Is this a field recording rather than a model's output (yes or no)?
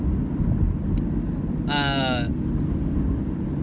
yes